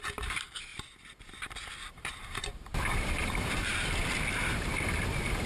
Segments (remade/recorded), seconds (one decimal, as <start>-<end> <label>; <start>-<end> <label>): 0.0-0.7 remade; 0.7-1.9 recorded; 1.9-3.7 remade; 3.7-5.5 recorded